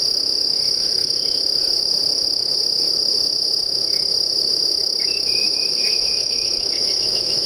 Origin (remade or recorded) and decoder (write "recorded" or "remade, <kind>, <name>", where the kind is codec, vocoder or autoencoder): remade, autoencoder, DAC-VAE